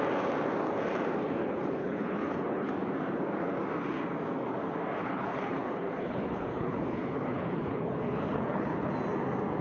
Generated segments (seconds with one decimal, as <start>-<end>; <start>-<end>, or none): 1.4-2.7; 5.0-8.9